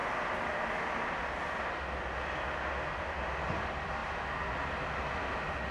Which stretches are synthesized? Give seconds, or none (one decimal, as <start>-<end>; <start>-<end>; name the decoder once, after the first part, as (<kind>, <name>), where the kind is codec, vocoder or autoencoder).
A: none